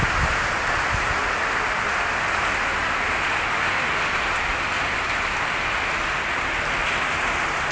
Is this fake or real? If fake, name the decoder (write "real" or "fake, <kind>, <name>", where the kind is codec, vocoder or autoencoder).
real